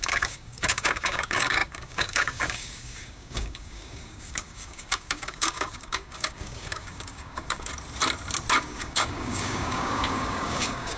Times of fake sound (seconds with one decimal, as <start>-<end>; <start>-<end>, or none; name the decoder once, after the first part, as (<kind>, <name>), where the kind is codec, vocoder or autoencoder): 0.0-7.7 (codec, DAC); 8.6-11.0